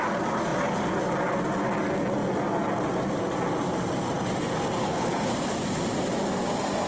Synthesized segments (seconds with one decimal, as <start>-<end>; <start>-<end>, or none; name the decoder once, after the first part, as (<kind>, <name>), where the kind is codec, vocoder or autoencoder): 4.8-5.3 (codec, HILCodec)